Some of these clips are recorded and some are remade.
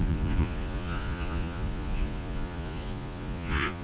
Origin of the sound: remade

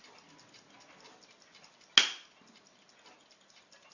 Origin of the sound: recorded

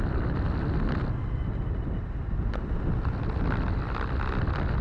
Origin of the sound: recorded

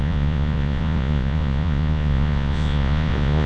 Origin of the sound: remade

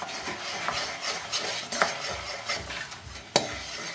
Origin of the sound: recorded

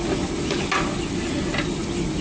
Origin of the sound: recorded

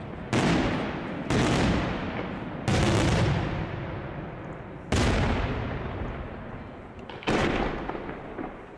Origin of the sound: recorded